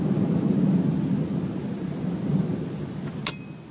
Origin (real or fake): real